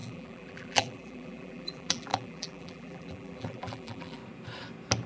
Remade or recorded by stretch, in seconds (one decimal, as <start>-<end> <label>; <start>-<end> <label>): 0.0-4.2 remade; 4.2-5.1 recorded